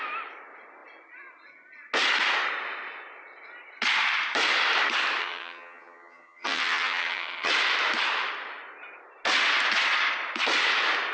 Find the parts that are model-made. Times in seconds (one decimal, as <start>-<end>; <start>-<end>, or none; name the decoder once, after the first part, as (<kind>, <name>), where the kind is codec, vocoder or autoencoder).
5.2-7.5 (vocoder, HiFi-GAN)